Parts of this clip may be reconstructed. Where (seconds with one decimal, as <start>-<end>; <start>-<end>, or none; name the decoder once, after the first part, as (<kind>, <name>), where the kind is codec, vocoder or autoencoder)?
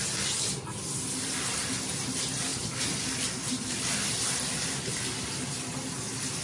none